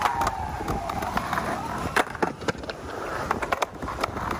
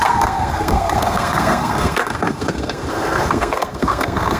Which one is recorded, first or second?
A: first